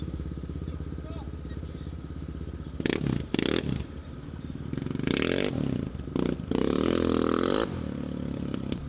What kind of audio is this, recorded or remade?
recorded